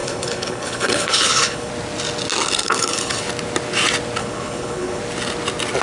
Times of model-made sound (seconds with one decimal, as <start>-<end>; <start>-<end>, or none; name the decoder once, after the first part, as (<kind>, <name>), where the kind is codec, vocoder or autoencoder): 0.0-1.7 (codec, HILCodec); 2.6-3.2; 4.2-5.0